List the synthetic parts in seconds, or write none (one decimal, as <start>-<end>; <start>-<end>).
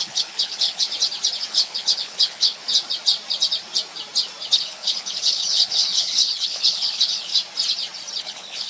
0.0-0.9; 1.5-2.6; 4.5-7.3; 8.2-8.7